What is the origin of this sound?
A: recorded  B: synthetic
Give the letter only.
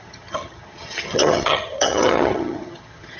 B